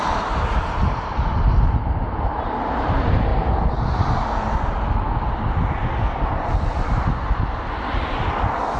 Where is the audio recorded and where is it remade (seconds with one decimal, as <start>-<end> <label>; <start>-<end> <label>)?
0.0-8.8 recorded